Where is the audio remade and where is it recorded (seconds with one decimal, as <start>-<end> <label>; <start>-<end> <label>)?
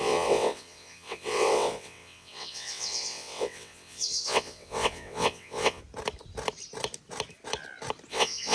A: 0.0-5.8 remade; 5.8-8.1 recorded; 8.1-8.5 remade